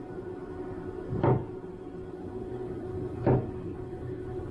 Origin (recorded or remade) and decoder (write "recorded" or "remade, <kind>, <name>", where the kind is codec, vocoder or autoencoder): recorded